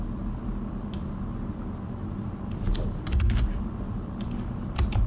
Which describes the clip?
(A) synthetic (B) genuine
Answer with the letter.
B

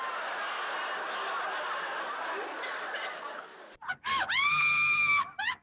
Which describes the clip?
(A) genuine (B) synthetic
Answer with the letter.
A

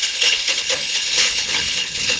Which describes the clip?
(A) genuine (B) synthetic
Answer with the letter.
B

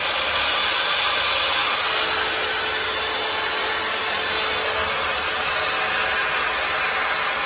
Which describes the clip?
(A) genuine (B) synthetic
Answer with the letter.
A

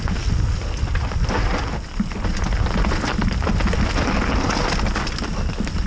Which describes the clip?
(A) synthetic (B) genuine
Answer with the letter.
B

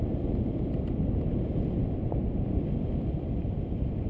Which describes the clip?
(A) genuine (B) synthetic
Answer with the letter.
A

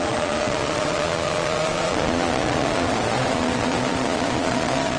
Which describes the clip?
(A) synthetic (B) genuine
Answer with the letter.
A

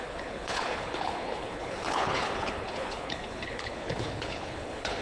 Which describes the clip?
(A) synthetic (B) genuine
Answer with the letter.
A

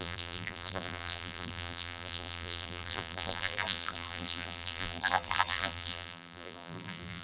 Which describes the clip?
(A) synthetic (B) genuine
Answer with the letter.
A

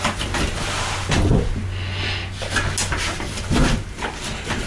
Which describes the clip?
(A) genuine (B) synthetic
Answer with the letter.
A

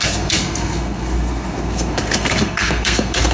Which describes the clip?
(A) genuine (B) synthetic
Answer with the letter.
B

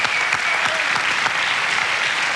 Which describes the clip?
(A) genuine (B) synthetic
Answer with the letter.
A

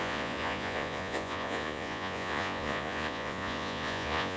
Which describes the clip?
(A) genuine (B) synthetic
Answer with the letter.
B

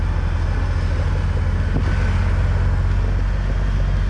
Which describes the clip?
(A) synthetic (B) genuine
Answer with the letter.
B